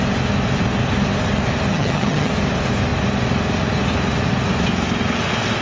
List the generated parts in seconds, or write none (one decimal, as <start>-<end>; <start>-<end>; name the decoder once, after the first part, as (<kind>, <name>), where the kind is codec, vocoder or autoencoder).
1.7-2.3 (vocoder, HiFi-GAN)